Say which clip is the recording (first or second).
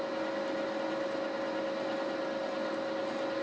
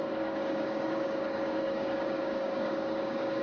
first